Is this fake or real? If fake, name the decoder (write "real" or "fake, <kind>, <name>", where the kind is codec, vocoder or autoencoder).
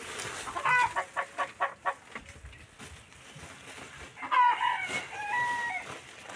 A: real